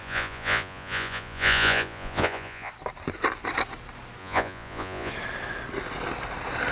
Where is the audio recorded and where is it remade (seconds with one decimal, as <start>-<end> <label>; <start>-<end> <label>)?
0.0-2.7 remade; 2.7-4.2 recorded; 4.2-5.1 remade; 5.1-6.7 recorded